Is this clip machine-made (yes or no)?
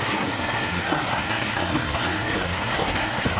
yes